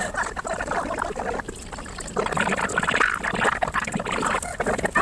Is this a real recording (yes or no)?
yes